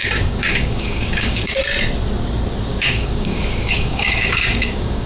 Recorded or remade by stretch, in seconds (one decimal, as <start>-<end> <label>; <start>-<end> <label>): 0.0-1.6 remade; 1.6-2.7 recorded; 2.7-5.1 remade

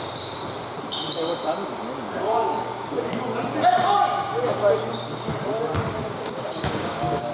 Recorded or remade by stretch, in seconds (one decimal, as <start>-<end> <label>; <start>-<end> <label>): 0.0-2.1 recorded; 2.1-3.1 remade; 3.1-6.0 recorded; 6.0-7.3 remade

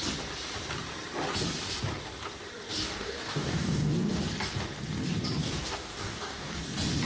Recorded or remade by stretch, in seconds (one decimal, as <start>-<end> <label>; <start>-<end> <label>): 0.0-2.7 recorded; 2.7-4.2 remade; 4.2-5.4 recorded; 5.4-6.6 remade; 6.6-7.0 recorded

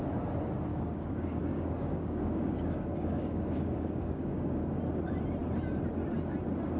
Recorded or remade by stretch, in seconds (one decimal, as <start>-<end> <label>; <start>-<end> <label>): 0.0-0.7 recorded; 0.7-4.8 remade; 4.8-6.8 recorded

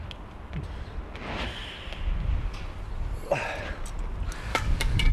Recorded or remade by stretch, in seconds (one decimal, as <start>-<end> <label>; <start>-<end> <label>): 0.0-4.5 recorded; 4.5-5.1 remade

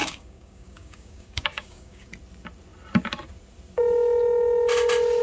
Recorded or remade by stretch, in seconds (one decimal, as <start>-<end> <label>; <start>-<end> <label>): 0.0-2.1 remade; 2.1-5.2 recorded

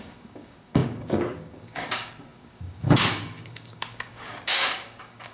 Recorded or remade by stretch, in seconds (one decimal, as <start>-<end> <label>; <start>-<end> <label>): 0.0-5.3 remade

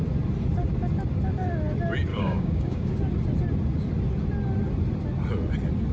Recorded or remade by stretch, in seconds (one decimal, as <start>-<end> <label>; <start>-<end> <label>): 0.0-2.1 recorded; 2.1-2.9 remade; 2.9-5.9 recorded